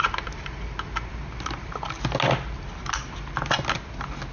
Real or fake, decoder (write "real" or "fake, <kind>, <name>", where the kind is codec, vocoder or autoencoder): real